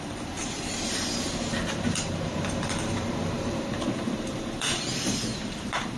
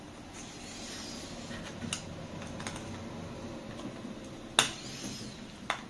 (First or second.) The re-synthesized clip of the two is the first